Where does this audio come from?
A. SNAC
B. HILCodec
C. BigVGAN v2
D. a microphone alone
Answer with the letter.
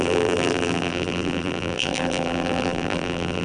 C